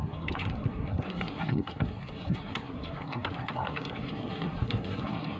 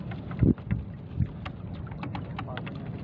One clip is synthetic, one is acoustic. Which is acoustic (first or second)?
second